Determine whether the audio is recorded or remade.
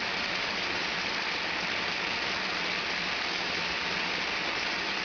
recorded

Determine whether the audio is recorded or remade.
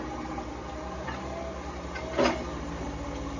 recorded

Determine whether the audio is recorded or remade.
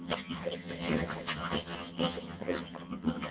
remade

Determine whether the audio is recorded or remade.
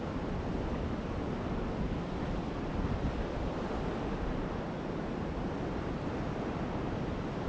recorded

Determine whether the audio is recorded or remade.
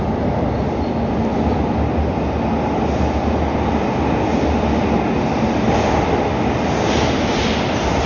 recorded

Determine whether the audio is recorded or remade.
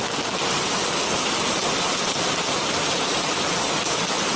recorded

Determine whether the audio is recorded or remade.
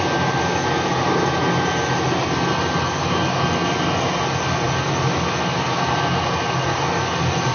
recorded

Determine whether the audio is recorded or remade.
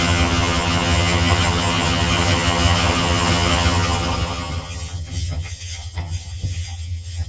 remade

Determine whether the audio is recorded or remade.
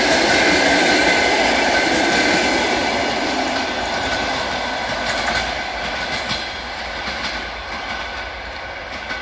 recorded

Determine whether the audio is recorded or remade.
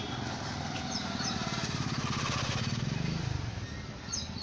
recorded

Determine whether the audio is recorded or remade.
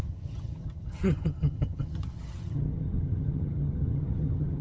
remade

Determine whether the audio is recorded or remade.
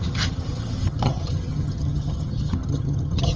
remade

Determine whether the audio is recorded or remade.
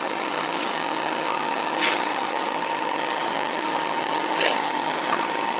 remade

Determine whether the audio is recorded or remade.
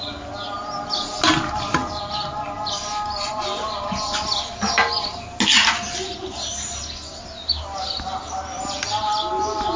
recorded